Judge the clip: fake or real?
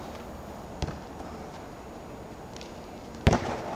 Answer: real